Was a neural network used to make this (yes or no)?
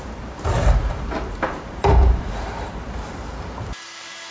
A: yes